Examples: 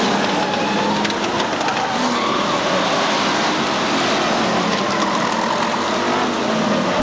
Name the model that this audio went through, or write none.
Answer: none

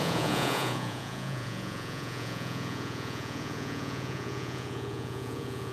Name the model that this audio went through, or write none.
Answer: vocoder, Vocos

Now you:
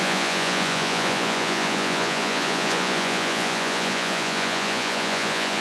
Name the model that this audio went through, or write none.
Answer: vocoder, Vocos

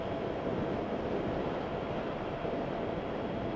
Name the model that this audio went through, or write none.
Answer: none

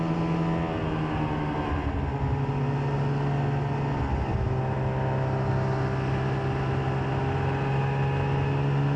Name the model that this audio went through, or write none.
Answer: none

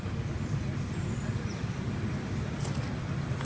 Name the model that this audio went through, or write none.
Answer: none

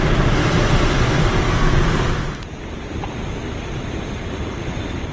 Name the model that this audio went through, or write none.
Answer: none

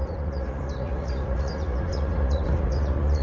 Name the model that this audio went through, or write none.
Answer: vocoder, Vocos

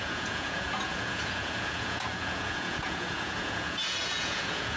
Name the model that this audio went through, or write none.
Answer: vocoder, Vocos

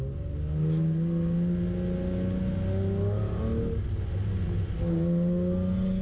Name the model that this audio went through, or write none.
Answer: none